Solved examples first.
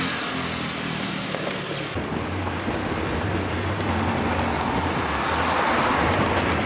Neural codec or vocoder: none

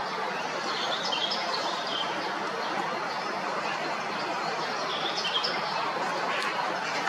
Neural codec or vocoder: none